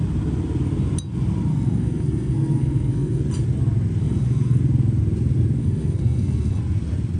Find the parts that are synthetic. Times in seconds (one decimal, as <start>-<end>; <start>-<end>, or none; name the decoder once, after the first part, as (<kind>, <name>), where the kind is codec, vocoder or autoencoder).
1.5-3.2 (codec, SNAC); 4.0-4.6; 5.6-6.6